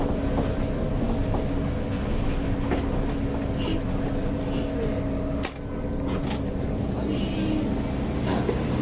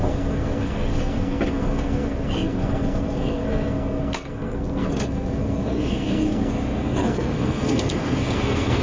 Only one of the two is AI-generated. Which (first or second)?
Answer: second